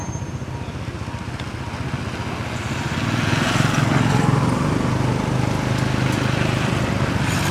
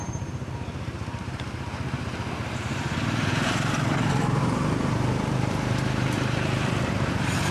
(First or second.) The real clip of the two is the first